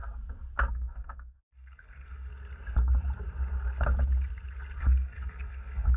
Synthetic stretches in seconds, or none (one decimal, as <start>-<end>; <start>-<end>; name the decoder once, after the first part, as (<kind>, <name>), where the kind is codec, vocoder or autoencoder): 0.7-2.3 (codec, SNAC); 4.8-6.0